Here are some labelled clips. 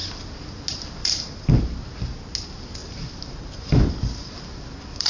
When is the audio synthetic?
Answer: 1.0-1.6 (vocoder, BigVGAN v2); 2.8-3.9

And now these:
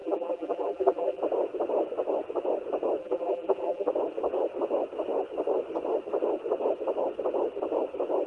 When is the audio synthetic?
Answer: 0.0-1.2 (vocoder, BigVGAN v2); 3.0-3.9

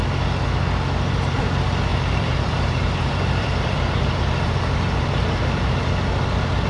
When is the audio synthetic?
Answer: 1.9-5.9 (vocoder, BigVGAN v2)

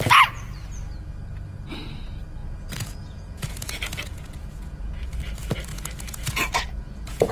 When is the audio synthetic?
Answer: 2.4-5.2 (vocoder, Vocos); 5.7-7.3

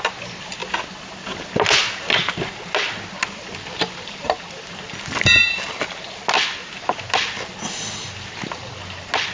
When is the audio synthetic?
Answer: none

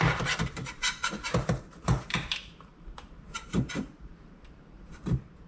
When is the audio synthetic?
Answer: 0.0-5.5 (vocoder, BigVGAN v2)

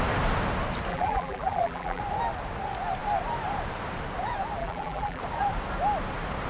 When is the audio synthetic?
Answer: 0.9-2.0 (vocoder, BigVGAN v2); 4.6-5.2